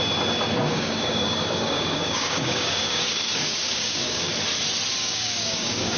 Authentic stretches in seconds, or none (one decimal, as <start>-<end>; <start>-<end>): 0.0-0.7; 4.3-5.0